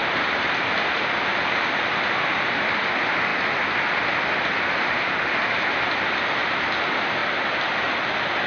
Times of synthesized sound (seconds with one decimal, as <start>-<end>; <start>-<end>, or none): none